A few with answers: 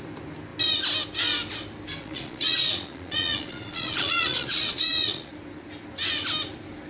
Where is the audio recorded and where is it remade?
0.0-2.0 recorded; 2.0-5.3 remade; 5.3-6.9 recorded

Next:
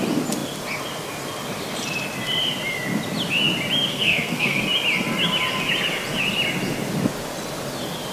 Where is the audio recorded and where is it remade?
0.0-3.9 recorded; 3.9-4.6 remade; 4.6-8.1 recorded

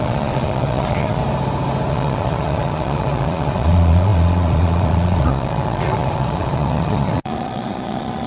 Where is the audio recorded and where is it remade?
0.0-1.2 remade; 1.2-1.9 recorded; 1.9-8.3 remade

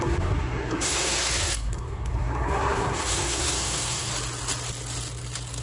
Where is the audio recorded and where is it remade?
0.0-4.1 remade; 4.1-5.6 recorded